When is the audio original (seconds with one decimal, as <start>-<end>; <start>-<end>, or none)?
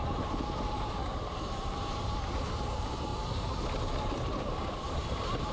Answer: 3.1-4.9